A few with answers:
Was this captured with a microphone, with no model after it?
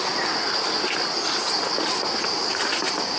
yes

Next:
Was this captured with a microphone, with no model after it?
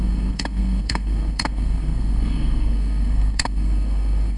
no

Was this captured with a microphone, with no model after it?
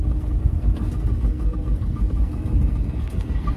no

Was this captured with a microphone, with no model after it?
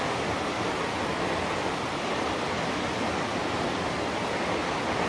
yes